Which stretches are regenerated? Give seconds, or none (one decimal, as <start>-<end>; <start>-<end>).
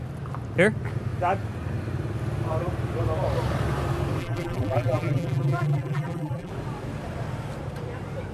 4.2-6.5